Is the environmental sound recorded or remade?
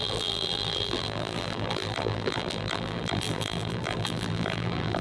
remade